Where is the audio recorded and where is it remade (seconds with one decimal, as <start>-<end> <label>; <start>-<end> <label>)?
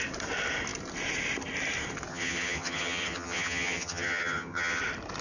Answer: 0.0-2.1 recorded; 2.1-4.8 remade; 4.8-5.2 recorded